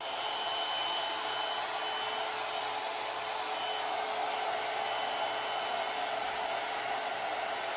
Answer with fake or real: real